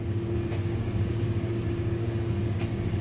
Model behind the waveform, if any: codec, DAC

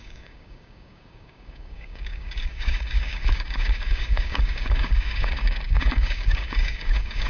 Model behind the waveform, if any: codec, DAC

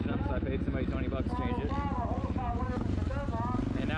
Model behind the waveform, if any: none